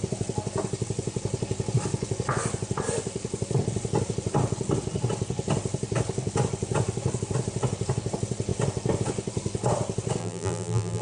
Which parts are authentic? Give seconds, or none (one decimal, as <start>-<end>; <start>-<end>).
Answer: 0.0-10.2